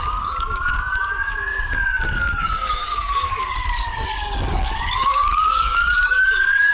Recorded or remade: remade